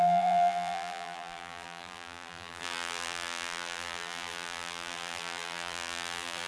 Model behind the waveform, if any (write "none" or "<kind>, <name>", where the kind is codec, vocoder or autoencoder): vocoder, BigVGAN v2